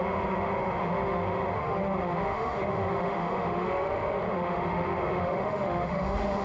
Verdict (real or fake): fake